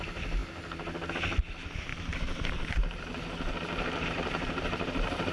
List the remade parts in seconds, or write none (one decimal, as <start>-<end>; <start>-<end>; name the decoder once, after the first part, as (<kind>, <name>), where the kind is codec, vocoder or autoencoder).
1.9-5.3 (vocoder, BigVGAN v2)